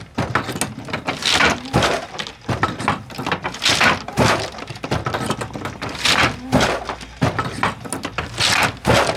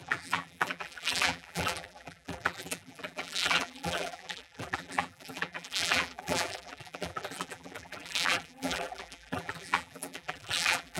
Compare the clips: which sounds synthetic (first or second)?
second